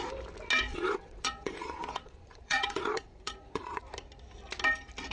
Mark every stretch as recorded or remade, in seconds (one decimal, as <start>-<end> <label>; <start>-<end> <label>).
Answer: 0.0-0.7 recorded; 0.7-3.8 remade; 3.8-5.1 recorded